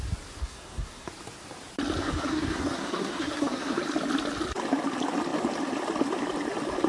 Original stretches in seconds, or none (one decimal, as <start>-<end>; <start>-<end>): 0.0-0.4; 1.1-2.0; 3.8-6.9